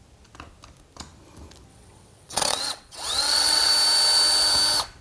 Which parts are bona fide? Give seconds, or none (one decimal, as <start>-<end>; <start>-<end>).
0.0-1.7; 3.7-5.0